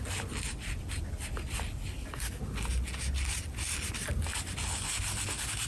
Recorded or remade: recorded